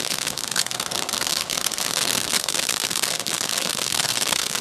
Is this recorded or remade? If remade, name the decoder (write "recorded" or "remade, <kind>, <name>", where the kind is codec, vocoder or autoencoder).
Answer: remade, codec, SNAC